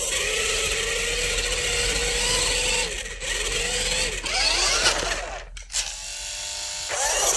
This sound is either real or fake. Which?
real